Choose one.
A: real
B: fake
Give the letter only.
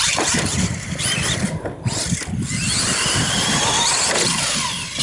A